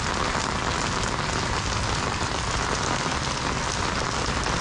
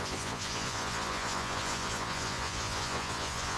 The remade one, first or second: second